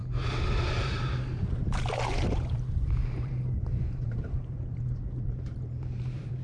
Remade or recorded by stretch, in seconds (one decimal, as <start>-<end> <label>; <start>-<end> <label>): 0.0-0.7 recorded; 0.7-6.4 remade